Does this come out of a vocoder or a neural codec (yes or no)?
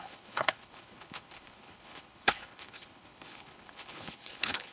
yes